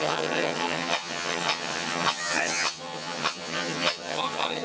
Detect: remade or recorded remade